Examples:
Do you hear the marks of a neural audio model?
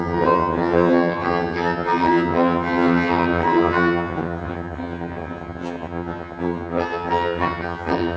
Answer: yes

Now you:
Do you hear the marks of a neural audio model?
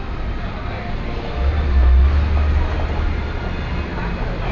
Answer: no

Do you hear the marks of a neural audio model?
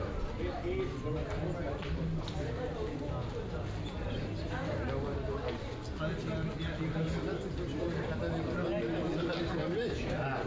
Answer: no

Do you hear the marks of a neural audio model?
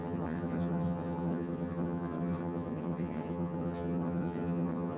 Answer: yes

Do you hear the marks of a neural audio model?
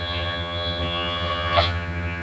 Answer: yes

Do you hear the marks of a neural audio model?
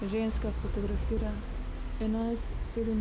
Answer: no